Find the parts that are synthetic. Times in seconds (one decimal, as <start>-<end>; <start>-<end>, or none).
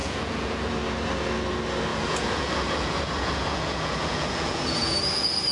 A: 0.0-0.7; 1.9-5.5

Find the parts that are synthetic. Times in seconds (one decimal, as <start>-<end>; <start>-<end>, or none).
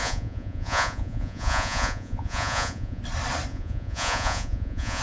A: 0.0-3.0; 3.5-5.0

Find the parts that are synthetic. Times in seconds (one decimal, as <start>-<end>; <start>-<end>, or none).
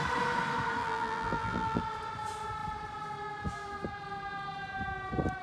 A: 0.8-1.8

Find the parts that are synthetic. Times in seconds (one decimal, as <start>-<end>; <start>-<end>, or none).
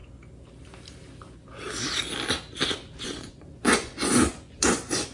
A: 3.0-5.1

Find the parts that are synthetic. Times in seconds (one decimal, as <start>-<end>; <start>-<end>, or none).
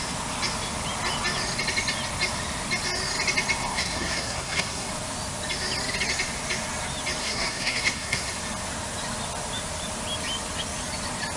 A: 3.7-4.9; 7.2-8.4